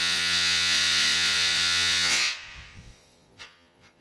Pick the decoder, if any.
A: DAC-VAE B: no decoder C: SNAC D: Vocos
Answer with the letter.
D